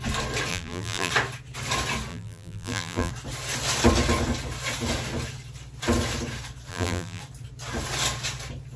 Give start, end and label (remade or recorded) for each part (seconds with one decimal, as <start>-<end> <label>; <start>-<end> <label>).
0.0-0.5 recorded; 0.5-1.1 remade; 1.1-2.1 recorded; 2.1-3.1 remade; 3.1-6.7 recorded; 6.7-7.2 remade; 7.2-8.8 recorded